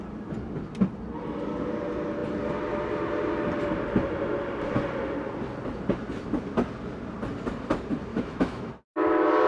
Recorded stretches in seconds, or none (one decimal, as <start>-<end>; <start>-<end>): 0.0-8.1; 8.7-9.5